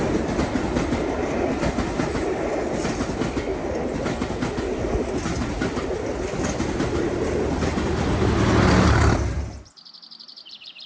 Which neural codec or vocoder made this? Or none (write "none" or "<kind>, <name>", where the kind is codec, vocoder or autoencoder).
none